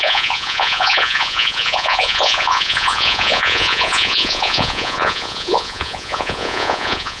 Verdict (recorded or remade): remade